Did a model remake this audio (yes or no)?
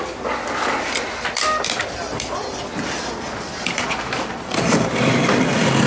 yes